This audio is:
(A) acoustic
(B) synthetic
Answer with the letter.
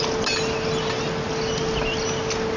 A